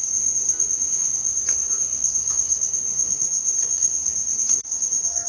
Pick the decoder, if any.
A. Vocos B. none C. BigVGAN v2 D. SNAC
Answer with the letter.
D